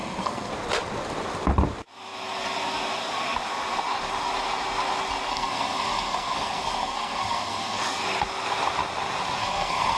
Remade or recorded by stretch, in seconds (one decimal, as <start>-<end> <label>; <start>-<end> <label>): 0.0-0.5 remade; 0.5-5.3 recorded; 5.3-7.8 remade; 7.8-9.4 recorded; 9.4-10.0 remade